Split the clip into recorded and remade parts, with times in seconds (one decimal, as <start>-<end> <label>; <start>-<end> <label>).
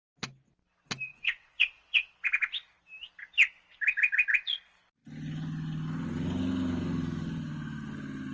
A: 0.0-1.1 recorded; 1.1-2.1 remade; 2.1-8.3 recorded